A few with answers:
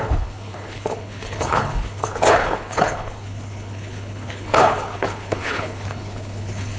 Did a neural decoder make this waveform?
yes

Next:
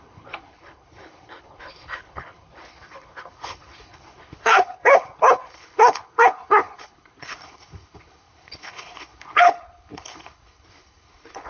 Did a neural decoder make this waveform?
yes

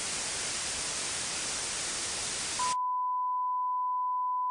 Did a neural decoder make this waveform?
no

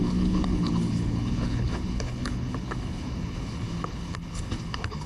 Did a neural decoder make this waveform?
yes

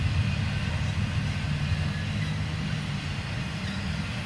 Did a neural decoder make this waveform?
no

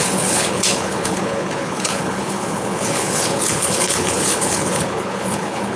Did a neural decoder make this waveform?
yes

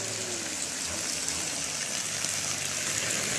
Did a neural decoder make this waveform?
no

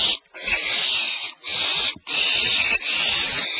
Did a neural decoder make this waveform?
no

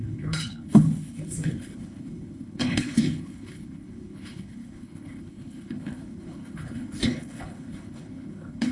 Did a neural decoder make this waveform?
yes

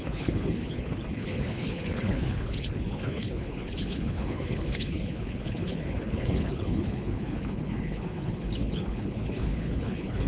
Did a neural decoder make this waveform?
yes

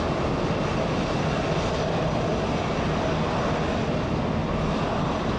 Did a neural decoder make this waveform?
no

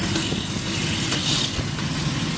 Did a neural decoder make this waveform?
no